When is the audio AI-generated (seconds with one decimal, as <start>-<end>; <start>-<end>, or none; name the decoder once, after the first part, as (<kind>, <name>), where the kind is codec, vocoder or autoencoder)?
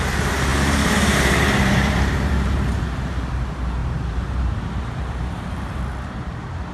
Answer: 0.5-2.8 (vocoder, BigVGAN v2); 3.8-5.8